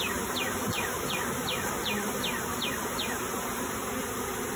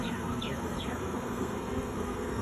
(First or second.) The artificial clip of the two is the second